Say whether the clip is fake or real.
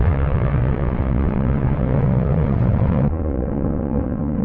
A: fake